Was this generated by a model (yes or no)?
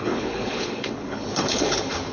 yes